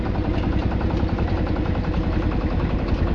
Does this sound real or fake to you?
real